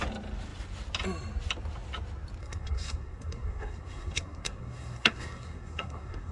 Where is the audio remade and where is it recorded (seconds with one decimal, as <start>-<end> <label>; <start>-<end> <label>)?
0.0-2.4 recorded; 2.4-6.3 remade